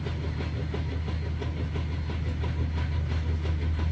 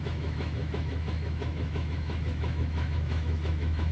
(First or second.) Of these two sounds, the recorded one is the first